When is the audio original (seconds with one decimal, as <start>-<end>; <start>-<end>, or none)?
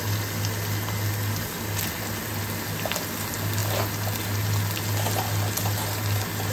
0.0-6.5